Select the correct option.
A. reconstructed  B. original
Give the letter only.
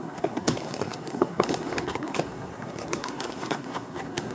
A